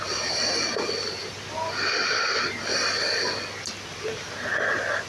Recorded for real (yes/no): yes